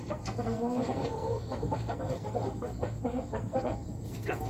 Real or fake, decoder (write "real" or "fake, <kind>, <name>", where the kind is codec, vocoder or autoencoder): fake, codec, SNAC